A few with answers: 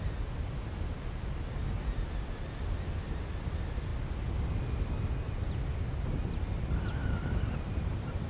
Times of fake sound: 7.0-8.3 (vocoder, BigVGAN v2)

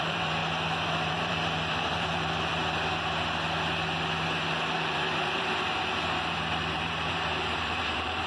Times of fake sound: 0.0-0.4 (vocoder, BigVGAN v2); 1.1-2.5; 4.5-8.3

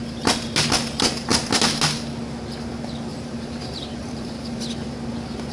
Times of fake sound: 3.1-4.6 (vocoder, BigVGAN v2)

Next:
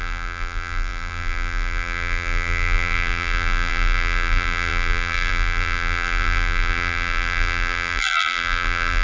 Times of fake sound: 0.0-9.0 (vocoder, BigVGAN v2)

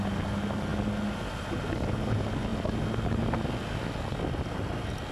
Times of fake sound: none

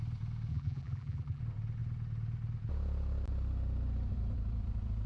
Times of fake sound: 0.5-1.4 (vocoder, BigVGAN v2)